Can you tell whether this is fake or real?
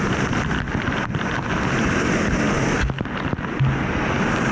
real